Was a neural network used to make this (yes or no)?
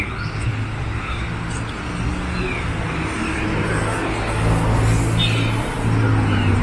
no